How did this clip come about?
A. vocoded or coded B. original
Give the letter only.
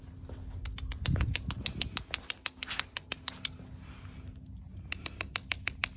B